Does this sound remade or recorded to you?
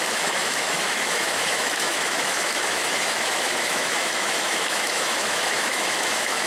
remade